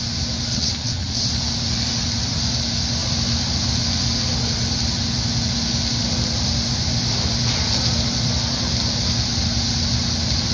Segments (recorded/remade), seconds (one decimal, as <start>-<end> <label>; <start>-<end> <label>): 0.0-0.5 recorded; 0.5-1.3 remade; 1.3-10.5 recorded